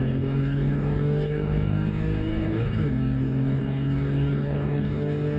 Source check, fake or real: fake